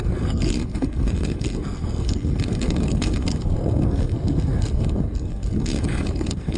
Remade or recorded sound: remade